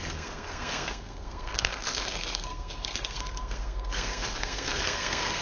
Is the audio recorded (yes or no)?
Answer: no